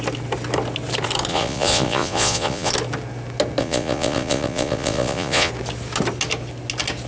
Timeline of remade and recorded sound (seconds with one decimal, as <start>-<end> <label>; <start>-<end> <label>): 0.0-1.3 recorded; 1.3-2.7 remade; 2.7-3.6 recorded; 3.6-5.5 remade; 5.5-7.1 recorded